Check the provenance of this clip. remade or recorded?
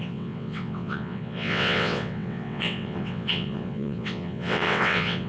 remade